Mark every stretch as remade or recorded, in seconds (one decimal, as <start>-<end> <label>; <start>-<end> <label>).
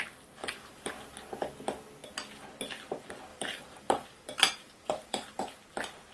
0.0-0.4 recorded; 0.4-0.9 remade; 0.9-3.3 recorded; 3.3-5.4 remade; 5.4-6.1 recorded